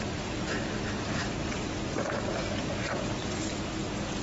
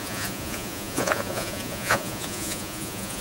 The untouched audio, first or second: first